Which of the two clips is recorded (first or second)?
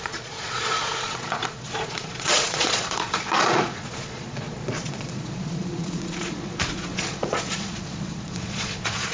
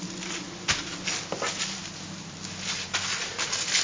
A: second